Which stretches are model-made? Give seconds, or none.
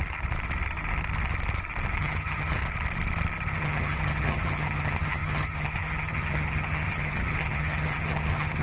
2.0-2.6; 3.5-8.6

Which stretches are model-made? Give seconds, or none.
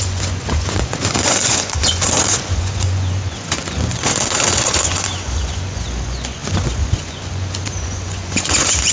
0.0-8.9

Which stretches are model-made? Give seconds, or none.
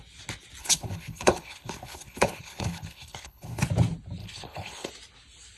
0.6-3.6; 4.2-4.9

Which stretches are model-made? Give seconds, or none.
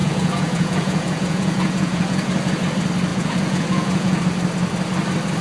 0.0-2.6; 3.1-4.2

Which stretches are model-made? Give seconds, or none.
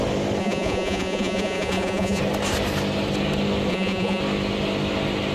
0.4-2.2; 3.7-4.2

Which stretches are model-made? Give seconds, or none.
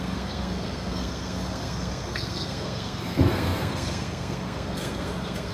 0.0-5.5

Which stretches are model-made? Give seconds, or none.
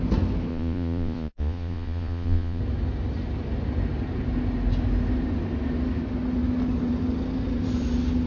0.5-2.6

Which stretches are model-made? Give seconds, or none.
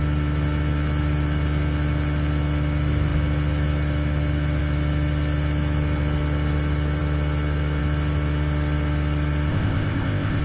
9.5-10.4